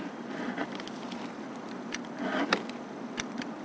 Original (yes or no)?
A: no